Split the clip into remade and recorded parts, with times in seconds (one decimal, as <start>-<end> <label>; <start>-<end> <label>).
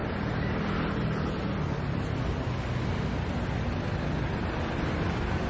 0.0-5.5 recorded